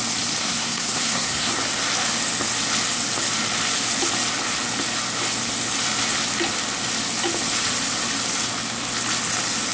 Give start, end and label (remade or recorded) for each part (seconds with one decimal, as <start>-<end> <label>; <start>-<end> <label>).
0.0-0.4 recorded; 0.4-1.5 remade; 1.5-9.7 recorded